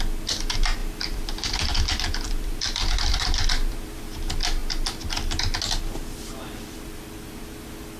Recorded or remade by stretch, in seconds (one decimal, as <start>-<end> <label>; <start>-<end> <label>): 0.0-0.8 recorded; 0.8-4.0 remade; 4.0-8.0 recorded